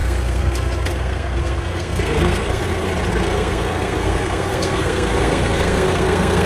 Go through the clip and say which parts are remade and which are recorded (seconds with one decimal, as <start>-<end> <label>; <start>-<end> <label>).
0.0-2.6 remade; 2.6-3.1 recorded; 3.1-6.5 remade

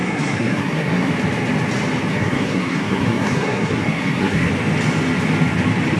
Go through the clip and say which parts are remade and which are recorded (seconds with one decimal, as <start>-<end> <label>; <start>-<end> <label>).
0.0-1.1 remade; 1.1-2.1 recorded; 2.1-4.5 remade; 4.5-6.0 recorded

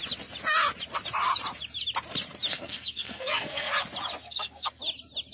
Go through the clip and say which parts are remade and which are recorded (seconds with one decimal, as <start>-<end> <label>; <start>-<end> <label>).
0.0-2.5 recorded; 2.5-3.7 remade; 3.7-4.2 recorded; 4.2-4.8 remade; 4.8-5.3 recorded

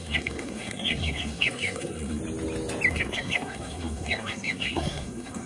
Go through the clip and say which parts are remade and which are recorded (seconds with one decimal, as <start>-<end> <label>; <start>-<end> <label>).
0.0-2.2 remade; 2.2-2.9 recorded; 2.9-5.5 remade

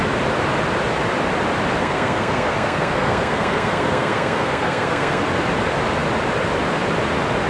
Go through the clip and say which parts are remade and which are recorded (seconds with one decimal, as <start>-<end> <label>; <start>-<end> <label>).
0.0-1.8 recorded; 1.8-5.2 remade; 5.2-7.5 recorded

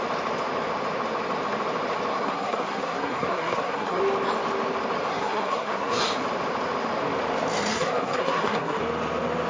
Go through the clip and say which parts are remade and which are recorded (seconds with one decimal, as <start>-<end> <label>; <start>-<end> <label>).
0.0-2.1 recorded; 2.1-4.0 remade; 4.0-5.1 recorded; 5.1-6.0 remade; 6.0-7.7 recorded; 7.7-8.8 remade; 8.8-9.5 recorded

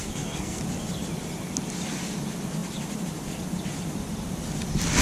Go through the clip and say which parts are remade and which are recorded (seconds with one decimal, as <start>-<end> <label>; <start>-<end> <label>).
0.0-0.6 remade; 0.6-5.0 recorded

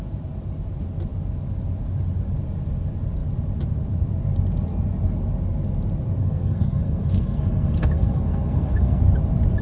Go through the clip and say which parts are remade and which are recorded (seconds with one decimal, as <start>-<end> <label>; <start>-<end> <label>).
0.0-6.2 recorded; 6.2-9.0 remade; 9.0-9.6 recorded